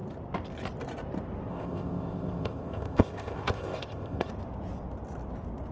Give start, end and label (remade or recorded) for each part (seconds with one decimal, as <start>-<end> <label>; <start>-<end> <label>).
0.0-1.5 recorded; 1.5-4.3 remade; 4.3-5.7 recorded